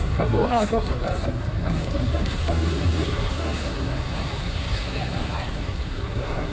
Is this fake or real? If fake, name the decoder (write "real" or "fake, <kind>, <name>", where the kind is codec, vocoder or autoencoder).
fake, codec, SNAC